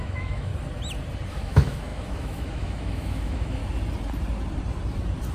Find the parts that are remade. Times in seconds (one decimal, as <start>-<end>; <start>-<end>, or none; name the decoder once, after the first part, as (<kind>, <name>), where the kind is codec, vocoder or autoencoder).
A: 0.0-0.5 (autoencoder, DAC-VAE); 1.3-3.6